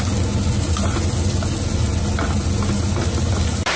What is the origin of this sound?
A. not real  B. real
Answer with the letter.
B